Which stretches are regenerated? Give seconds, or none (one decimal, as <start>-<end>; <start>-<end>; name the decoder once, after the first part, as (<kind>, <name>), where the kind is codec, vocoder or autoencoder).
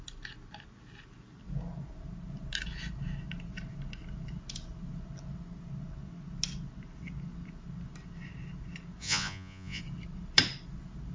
9.0-9.8 (vocoder, Vocos)